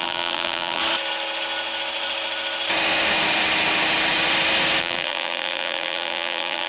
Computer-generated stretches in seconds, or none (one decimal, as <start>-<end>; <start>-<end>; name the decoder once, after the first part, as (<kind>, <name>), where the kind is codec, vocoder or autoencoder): 0.0-0.8 (vocoder, BigVGAN v2); 4.8-6.7